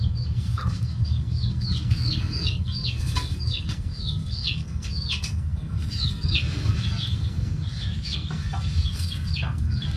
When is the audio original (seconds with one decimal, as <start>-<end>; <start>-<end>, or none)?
none